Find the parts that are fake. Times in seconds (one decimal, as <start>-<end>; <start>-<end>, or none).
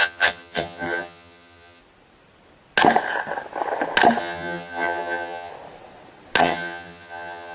0.0-1.8; 4.2-5.5; 6.4-7.5